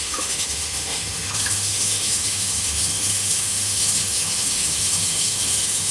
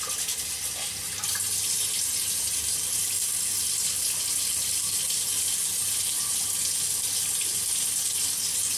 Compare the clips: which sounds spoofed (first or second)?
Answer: first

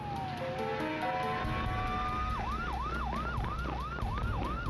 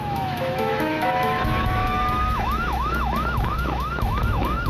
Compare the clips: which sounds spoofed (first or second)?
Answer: second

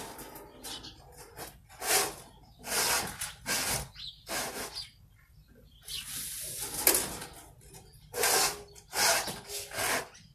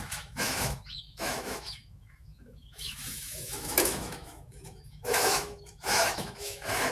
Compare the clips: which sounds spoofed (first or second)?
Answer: second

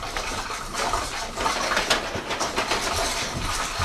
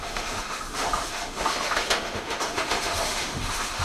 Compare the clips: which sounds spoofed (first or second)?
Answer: second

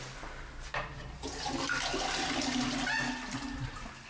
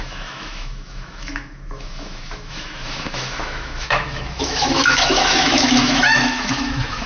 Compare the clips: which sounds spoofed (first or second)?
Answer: second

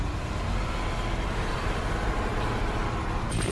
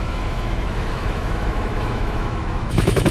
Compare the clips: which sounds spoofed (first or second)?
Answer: second